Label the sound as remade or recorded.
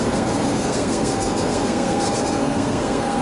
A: remade